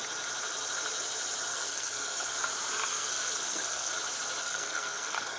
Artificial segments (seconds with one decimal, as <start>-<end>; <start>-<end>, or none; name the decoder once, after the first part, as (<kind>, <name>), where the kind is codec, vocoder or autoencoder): 1.5-2.5 (codec, SNAC); 2.9-3.9; 4.4-5.4